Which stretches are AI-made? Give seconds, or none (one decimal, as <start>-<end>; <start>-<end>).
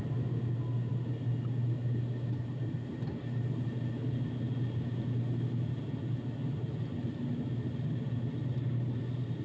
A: none